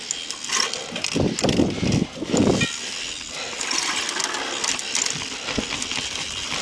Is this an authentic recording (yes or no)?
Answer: yes